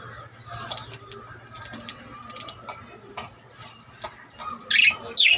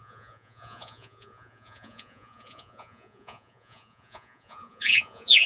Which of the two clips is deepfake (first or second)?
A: second